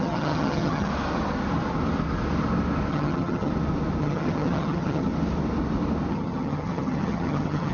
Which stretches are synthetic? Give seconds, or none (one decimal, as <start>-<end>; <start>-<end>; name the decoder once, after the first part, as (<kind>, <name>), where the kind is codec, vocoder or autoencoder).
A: 0.0-0.9 (vocoder, HiFi-GAN); 2.9-3.5; 4.0-5.1; 6.1-7.7